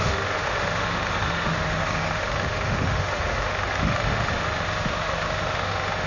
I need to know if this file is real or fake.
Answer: fake